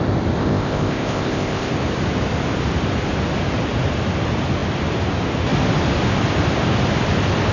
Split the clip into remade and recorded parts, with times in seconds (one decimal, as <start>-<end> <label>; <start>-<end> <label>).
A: 0.0-0.4 recorded; 0.4-1.7 remade; 1.7-7.5 recorded